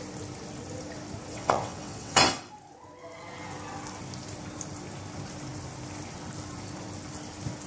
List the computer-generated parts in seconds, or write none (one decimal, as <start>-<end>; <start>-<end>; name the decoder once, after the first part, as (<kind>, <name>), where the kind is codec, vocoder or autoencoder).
1.3-2.4 (vocoder, WaveNeXt)